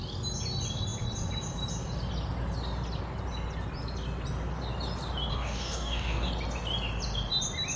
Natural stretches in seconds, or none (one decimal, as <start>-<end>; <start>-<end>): 0.0-5.3; 6.3-7.8